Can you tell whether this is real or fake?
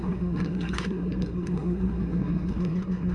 fake